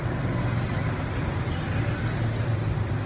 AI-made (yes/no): no